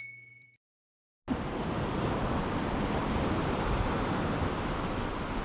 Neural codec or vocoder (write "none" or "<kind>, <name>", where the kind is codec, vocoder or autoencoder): none